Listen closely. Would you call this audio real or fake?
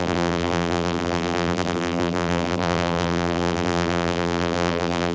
fake